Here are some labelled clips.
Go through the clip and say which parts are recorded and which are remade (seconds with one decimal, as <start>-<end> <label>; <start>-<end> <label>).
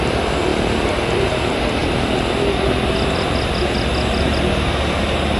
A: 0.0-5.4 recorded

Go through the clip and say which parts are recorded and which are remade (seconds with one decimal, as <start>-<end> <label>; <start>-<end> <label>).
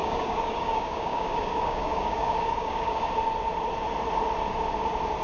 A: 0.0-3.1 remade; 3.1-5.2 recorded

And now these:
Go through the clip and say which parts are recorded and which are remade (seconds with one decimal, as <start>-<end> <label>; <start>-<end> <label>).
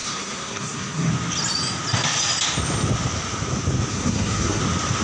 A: 0.0-1.1 remade; 1.1-3.9 recorded; 3.9-4.6 remade; 4.6-5.0 recorded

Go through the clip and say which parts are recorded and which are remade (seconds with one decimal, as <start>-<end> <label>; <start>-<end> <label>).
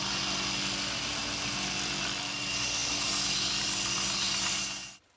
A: 0.0-5.2 recorded